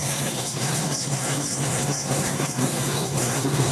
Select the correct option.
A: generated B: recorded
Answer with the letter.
A